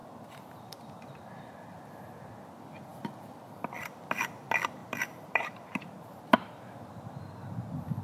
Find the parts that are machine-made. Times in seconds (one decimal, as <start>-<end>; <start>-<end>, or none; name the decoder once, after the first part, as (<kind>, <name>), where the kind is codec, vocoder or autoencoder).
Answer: 0.0-0.7 (vocoder, BigVGAN v2); 4.8-6.2